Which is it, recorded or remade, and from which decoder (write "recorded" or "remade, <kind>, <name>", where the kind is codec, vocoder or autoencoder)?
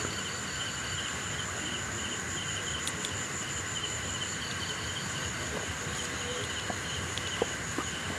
recorded